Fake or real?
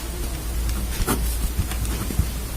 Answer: real